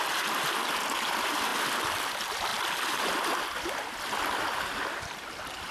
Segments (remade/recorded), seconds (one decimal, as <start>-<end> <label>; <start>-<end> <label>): 0.0-5.7 recorded